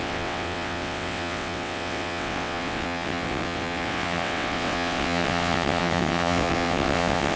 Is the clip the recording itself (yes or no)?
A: no